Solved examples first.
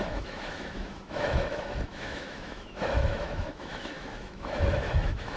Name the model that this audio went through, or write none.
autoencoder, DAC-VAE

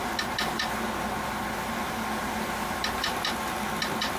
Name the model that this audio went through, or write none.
none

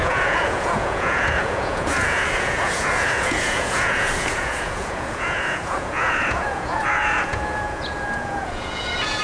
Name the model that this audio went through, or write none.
vocoder, Vocos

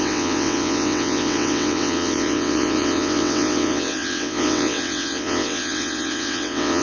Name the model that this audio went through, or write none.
vocoder, WaveNeXt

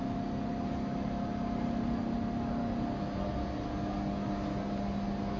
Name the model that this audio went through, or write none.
none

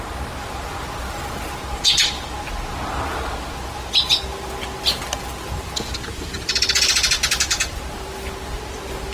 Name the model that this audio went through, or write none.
none